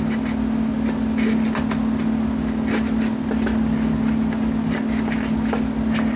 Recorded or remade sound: recorded